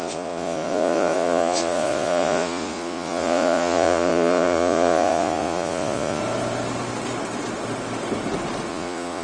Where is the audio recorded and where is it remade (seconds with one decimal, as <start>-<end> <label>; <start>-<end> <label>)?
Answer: 0.0-6.2 remade; 6.2-8.7 recorded; 8.7-9.2 remade